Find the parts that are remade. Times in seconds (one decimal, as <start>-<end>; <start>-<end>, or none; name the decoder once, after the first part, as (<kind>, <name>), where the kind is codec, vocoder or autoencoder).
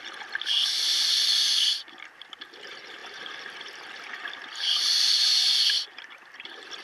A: none